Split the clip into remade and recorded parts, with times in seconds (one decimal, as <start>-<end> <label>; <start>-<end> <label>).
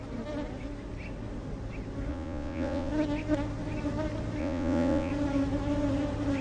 0.0-2.1 recorded; 2.1-2.9 remade; 2.9-4.4 recorded; 4.4-5.1 remade; 5.1-6.4 recorded